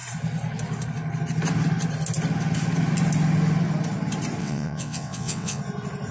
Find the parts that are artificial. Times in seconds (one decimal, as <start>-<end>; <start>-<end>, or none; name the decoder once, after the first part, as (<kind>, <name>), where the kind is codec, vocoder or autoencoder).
4.4-5.6 (vocoder, WaveNeXt)